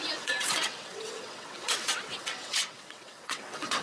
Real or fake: fake